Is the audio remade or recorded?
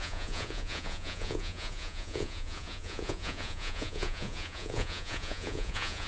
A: remade